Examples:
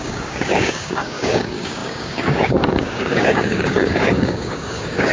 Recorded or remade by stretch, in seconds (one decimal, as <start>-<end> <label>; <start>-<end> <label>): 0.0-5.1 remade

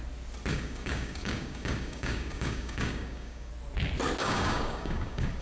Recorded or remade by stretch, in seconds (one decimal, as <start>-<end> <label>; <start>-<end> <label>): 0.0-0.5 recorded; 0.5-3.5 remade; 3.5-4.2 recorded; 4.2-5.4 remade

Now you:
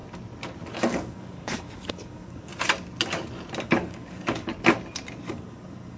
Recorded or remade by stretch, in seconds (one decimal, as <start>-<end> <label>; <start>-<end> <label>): 0.0-0.8 recorded; 0.8-2.5 remade; 2.5-3.6 recorded; 3.6-4.5 remade; 4.5-5.3 recorded; 5.3-6.0 remade